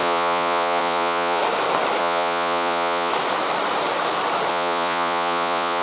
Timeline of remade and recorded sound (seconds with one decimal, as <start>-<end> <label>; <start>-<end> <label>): 0.0-1.4 remade; 1.4-2.0 recorded; 2.0-3.1 remade; 3.1-4.5 recorded; 4.5-5.8 remade